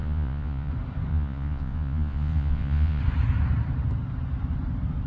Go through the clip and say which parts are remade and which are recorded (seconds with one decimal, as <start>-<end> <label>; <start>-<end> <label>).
0.0-0.7 remade; 0.7-1.1 recorded; 1.1-3.0 remade; 3.0-5.1 recorded